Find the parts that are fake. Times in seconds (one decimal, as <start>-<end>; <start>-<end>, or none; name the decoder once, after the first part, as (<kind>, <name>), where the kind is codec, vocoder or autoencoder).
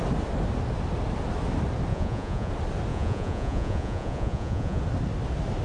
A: 1.9-2.5 (vocoder, Vocos); 2.9-4.8